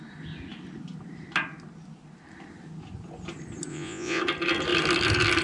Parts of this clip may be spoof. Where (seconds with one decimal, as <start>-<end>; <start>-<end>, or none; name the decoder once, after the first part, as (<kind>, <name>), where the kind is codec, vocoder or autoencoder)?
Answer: 3.7-4.2 (vocoder, Vocos)